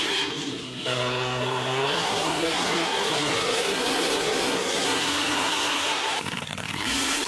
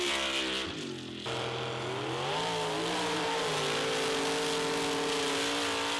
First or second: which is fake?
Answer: first